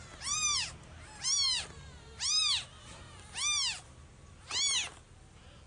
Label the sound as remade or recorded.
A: recorded